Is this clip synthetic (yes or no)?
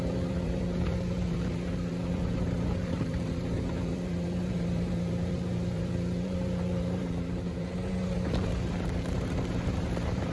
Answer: yes